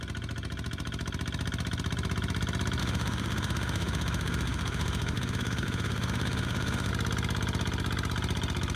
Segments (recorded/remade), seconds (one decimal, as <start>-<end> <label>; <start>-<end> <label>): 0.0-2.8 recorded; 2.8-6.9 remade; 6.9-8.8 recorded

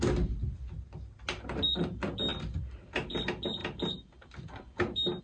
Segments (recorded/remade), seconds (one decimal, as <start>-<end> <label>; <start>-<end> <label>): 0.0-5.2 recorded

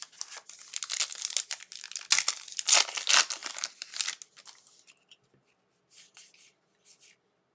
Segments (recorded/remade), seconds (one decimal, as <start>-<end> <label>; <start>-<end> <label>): 0.0-7.5 recorded

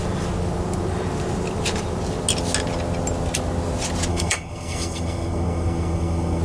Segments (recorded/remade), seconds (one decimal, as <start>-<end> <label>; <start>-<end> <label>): 0.0-4.1 recorded; 4.1-6.4 remade

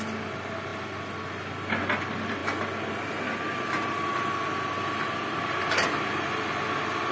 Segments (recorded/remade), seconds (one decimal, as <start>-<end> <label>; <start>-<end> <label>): 0.0-7.1 recorded

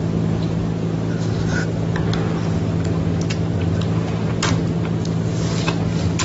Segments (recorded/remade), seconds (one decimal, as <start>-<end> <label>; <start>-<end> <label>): 0.0-6.2 recorded

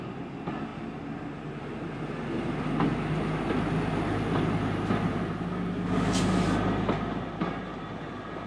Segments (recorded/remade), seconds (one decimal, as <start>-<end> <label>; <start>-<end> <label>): 0.0-8.5 recorded